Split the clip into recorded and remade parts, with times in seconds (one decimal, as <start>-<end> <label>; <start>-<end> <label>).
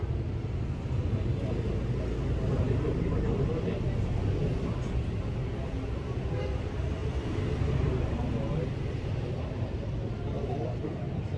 0.0-11.4 recorded